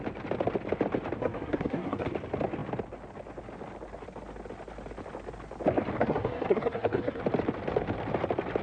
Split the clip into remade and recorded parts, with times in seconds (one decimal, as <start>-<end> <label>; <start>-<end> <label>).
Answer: 0.0-1.2 recorded; 1.2-2.1 remade; 2.1-6.0 recorded; 6.0-7.2 remade; 7.2-8.6 recorded